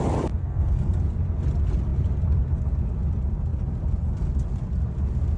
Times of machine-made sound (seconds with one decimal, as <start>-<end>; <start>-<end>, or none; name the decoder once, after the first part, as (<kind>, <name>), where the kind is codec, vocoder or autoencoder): 0.4-1.0 (codec, SNAC)